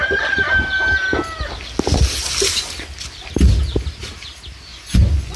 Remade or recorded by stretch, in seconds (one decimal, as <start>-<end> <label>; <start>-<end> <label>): 0.0-4.7 recorded; 4.7-5.4 remade